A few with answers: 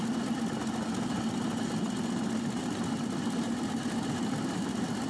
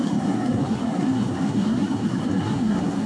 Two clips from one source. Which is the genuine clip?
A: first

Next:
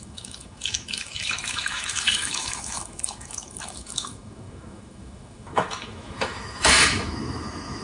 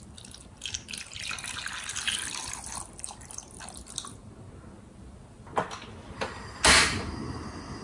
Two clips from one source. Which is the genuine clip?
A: second